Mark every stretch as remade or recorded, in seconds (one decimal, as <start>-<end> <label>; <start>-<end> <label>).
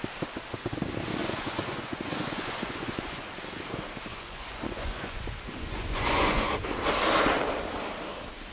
0.0-1.2 recorded; 1.2-3.2 remade; 3.2-4.1 recorded; 4.1-6.5 remade; 6.5-8.5 recorded